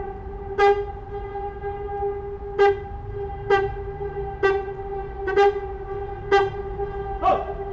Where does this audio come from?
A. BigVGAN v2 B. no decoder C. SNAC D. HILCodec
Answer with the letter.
B